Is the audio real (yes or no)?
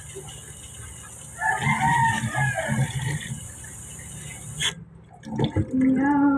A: yes